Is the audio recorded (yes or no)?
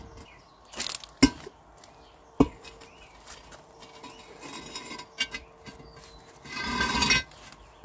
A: yes